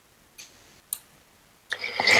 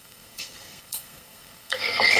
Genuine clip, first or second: first